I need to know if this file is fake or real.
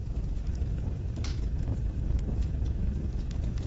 fake